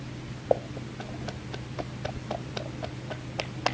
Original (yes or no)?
yes